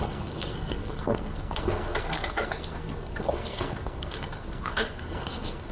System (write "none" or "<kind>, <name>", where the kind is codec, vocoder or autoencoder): codec, SNAC